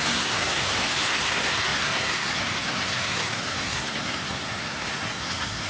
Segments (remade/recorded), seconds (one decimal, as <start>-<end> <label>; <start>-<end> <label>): 0.0-5.7 remade